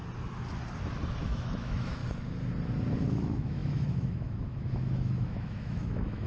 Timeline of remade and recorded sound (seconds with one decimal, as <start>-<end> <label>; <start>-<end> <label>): 0.0-1.2 recorded; 1.2-2.0 remade; 2.0-3.1 recorded; 3.1-6.3 remade

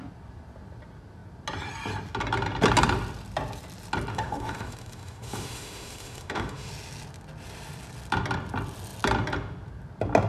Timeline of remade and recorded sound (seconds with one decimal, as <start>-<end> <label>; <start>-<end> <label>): 0.0-4.1 recorded; 4.1-6.7 remade; 6.7-10.3 recorded

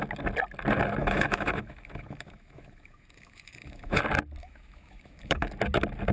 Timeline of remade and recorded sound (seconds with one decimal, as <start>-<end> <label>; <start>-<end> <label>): 0.0-1.0 recorded; 1.0-4.0 remade; 4.0-4.4 recorded; 4.4-5.5 remade; 5.5-6.1 recorded